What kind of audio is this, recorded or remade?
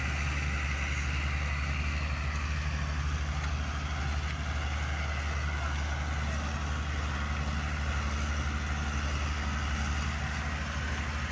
recorded